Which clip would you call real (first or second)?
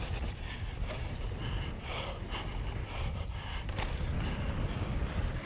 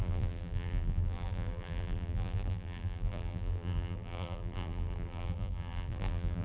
first